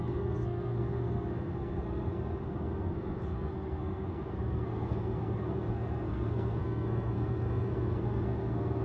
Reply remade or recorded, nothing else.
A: remade